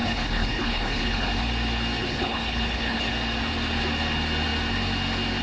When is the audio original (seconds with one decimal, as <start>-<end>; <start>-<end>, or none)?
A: 1.3-2.0; 3.1-5.4